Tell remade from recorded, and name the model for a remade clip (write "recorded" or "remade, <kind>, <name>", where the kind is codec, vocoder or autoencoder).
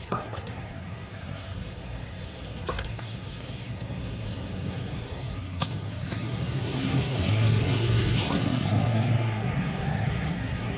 remade, codec, SNAC